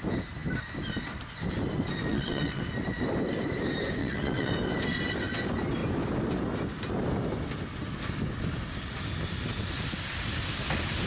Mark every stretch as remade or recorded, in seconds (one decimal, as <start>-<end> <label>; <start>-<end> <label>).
0.0-2.1 recorded; 2.1-2.6 remade; 2.6-4.0 recorded; 4.0-4.5 remade; 4.5-11.1 recorded